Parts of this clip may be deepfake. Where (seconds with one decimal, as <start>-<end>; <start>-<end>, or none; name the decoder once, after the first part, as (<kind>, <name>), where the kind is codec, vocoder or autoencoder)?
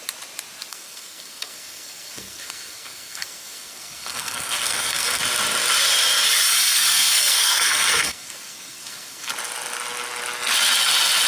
0.7-5.2 (codec, SNAC); 6.7-9.3